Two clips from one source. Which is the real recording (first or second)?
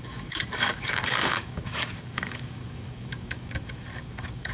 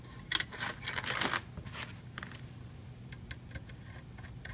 second